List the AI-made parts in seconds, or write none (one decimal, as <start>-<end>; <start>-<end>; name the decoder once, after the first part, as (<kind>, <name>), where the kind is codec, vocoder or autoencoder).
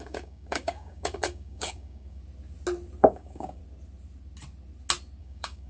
0.0-2.2 (codec, DAC); 3.0-3.6; 5.2-5.7